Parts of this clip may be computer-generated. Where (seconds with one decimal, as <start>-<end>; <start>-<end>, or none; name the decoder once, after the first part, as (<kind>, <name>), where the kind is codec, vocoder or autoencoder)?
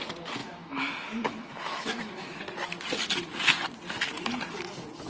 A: 0.4-2.4 (autoencoder, DAC-VAE)